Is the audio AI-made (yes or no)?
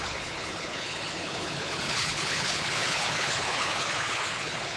yes